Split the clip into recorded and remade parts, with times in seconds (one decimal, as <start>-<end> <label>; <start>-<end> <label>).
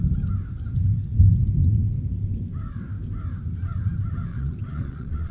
0.0-4.3 recorded; 4.3-5.3 remade